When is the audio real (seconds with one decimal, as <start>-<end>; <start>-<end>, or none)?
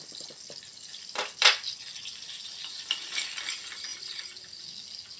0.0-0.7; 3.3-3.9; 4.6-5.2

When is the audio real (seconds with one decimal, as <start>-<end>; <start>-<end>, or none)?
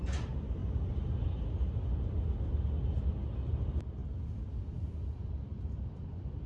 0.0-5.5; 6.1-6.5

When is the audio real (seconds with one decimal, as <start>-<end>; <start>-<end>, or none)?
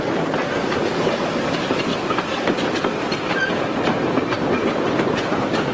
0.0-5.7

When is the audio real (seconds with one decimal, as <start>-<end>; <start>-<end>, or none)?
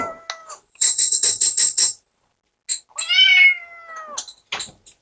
0.0-0.4; 2.3-5.0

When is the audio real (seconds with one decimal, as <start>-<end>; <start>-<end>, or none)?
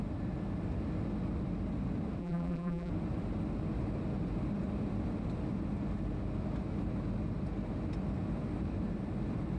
0.0-2.2; 2.9-9.6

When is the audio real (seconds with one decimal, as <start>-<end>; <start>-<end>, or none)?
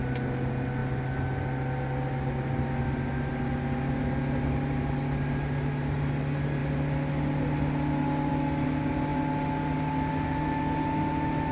0.0-11.5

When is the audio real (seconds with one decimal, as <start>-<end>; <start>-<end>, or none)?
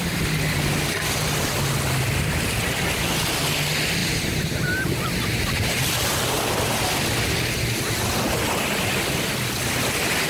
0.0-4.0; 7.0-10.3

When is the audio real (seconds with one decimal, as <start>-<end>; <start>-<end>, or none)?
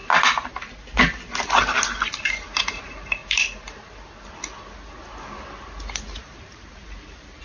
0.0-2.6; 3.2-6.2